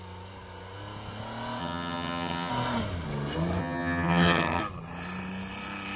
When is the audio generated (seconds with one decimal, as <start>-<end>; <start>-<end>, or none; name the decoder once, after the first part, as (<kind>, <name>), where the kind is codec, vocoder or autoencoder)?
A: 1.6-2.5 (vocoder, HiFi-GAN); 3.6-4.6